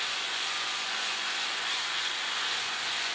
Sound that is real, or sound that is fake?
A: fake